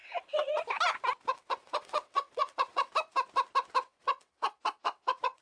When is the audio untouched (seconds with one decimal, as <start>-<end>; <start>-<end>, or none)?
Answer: 0.6-1.3; 2.9-3.8